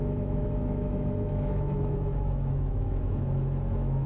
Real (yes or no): no